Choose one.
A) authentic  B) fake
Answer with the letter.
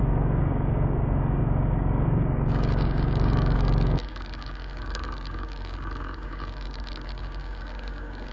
B